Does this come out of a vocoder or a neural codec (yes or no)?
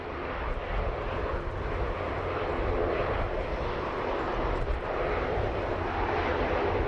no